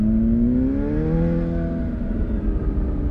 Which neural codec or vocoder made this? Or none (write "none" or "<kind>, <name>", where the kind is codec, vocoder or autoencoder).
none